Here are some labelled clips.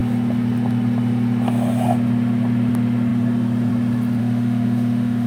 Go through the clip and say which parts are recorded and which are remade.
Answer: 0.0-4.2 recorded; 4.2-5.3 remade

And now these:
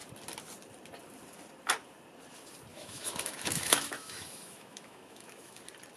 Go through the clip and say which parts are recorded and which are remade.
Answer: 0.0-2.7 recorded; 2.7-5.6 remade; 5.6-6.0 recorded

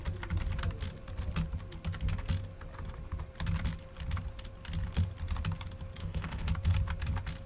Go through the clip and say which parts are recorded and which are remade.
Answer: 0.0-6.0 recorded; 6.0-6.5 remade; 6.5-7.5 recorded

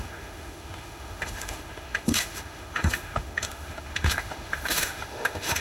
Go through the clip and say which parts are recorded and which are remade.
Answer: 0.0-5.6 remade

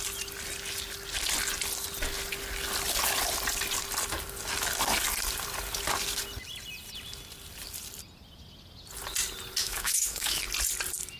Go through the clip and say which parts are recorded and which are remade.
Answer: 0.0-9.6 recorded; 9.6-10.4 remade; 10.4-11.2 recorded

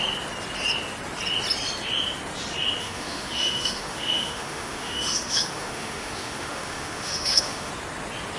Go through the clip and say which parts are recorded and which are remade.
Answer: 0.0-2.8 recorded; 2.8-7.7 remade; 7.7-8.4 recorded

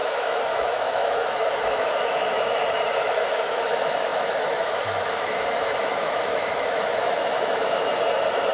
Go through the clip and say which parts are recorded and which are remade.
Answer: 0.0-7.9 remade; 7.9-8.5 recorded